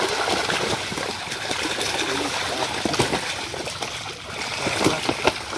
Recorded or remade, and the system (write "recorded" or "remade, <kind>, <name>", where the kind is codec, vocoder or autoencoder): recorded